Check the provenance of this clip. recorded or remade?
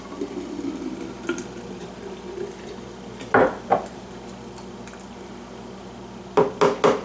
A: recorded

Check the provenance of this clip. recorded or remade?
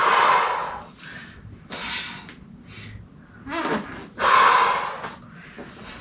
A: recorded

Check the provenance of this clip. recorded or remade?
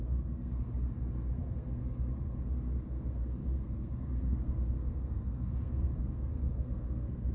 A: remade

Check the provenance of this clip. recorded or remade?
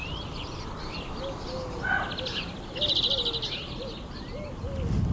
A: recorded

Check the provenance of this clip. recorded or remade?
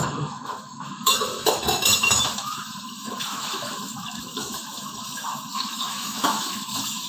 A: remade